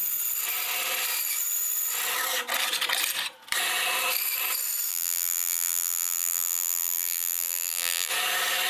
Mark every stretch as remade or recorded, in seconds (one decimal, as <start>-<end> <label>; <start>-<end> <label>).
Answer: 0.0-4.9 recorded; 4.9-8.1 remade; 8.1-8.7 recorded